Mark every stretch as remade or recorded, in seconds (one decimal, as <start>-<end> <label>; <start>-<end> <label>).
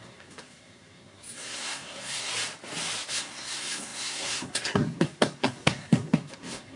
0.0-2.3 remade; 2.3-3.1 recorded; 3.1-6.8 remade